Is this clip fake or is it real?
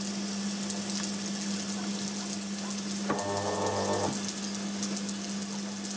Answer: real